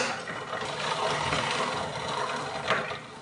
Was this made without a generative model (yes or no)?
yes